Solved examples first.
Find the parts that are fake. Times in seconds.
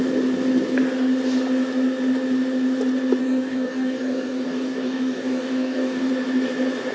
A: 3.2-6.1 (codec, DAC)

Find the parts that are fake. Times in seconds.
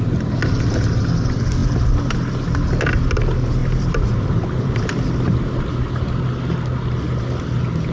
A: 3.6-4.8 (vocoder, BigVGAN v2)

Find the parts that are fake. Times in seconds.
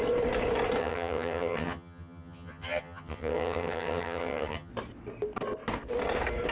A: 0.8-4.7 (vocoder, HiFi-GAN)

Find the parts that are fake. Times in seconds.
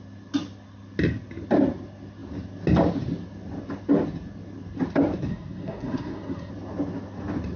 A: 5.3-6.5 (codec, SNAC)